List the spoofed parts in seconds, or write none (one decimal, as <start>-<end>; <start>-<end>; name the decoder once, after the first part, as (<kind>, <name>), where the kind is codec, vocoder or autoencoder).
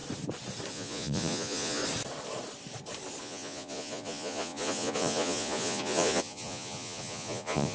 0.7-1.8 (vocoder, Vocos); 3.2-7.7